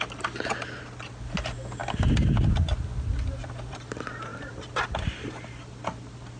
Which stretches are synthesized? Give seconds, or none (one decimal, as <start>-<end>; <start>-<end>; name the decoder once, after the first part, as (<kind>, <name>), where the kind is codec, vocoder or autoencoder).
none